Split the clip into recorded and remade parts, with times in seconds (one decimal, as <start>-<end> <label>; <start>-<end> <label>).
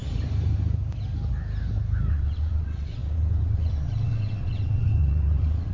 0.0-2.1 recorded; 2.1-5.7 remade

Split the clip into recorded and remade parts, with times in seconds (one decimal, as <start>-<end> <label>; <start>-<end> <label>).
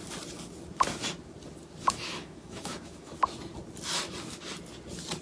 0.0-1.8 recorded; 1.8-3.1 remade; 3.1-5.2 recorded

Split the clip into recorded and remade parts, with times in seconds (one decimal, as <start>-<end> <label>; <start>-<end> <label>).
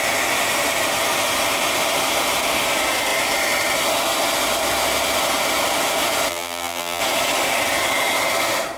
0.0-6.3 recorded; 6.3-7.0 remade; 7.0-8.8 recorded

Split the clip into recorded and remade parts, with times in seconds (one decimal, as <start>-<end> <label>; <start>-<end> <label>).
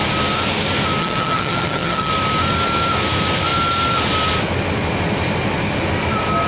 0.0-1.0 recorded; 1.0-2.1 remade; 2.1-6.5 recorded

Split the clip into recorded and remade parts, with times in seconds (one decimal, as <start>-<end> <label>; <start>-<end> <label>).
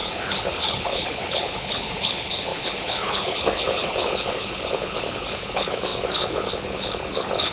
0.0-7.5 remade